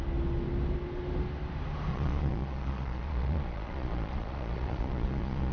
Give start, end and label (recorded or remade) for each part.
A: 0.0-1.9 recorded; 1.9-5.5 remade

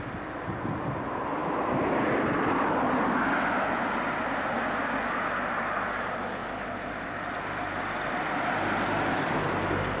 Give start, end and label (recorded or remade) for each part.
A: 0.0-10.0 recorded

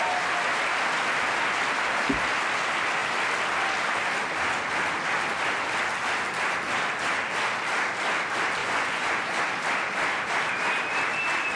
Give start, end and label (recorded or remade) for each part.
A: 0.0-8.6 recorded; 8.6-9.4 remade; 9.4-11.6 recorded